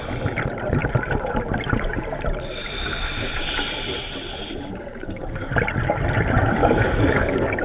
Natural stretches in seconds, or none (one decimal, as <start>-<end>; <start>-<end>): 0.0-4.9; 5.5-6.6